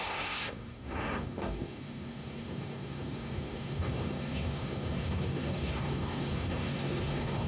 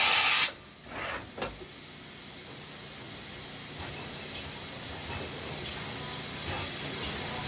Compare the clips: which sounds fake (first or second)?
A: first